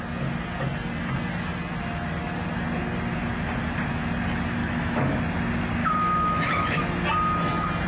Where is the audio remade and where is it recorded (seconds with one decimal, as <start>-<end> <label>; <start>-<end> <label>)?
0.0-4.6 recorded; 4.6-5.2 remade; 5.2-5.8 recorded; 5.8-6.8 remade; 6.8-7.9 recorded